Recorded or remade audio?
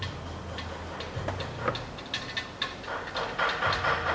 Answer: recorded